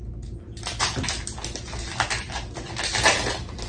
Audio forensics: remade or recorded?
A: recorded